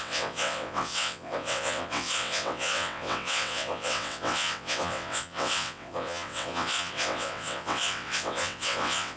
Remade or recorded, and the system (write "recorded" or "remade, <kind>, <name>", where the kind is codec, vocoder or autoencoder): remade, vocoder, WaveNeXt